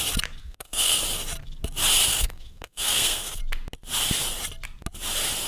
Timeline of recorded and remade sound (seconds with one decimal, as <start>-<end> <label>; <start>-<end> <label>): 0.0-0.4 recorded; 0.4-1.0 remade; 1.0-2.1 recorded; 2.1-3.4 remade; 3.4-5.5 recorded